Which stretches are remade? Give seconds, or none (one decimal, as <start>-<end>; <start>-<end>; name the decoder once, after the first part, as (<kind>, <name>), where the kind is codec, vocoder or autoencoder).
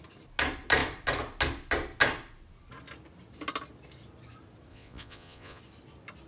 4.7-5.6 (vocoder, Vocos)